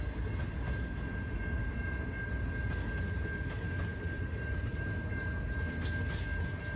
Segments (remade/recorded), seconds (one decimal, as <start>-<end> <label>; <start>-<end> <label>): 0.0-3.9 recorded; 3.9-4.8 remade; 4.8-6.8 recorded